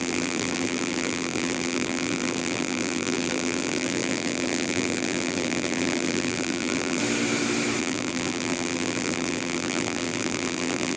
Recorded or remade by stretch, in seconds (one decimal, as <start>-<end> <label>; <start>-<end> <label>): 0.0-7.0 remade; 7.0-7.8 recorded; 7.8-11.0 remade